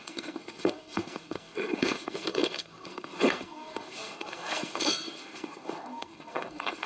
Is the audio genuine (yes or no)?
no